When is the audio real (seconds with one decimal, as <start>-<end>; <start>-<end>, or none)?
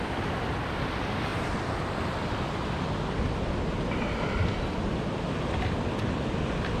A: 0.0-6.8